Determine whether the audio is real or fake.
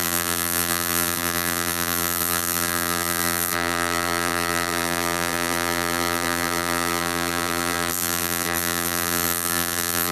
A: fake